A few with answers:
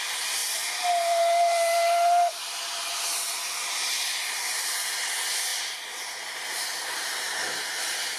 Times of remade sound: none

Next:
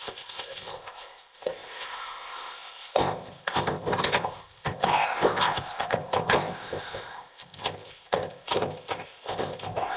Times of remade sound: 0.0-10.0

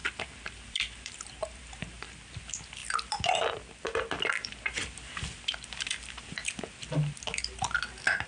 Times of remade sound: 0.0-2.2

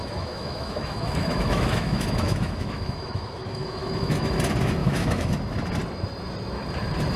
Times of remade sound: 0.0-4.3; 4.8-5.3

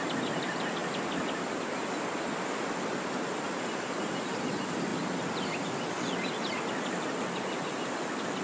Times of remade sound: none

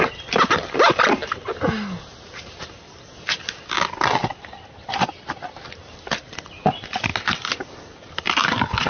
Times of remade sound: none